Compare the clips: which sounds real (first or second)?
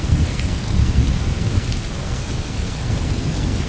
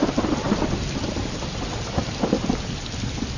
second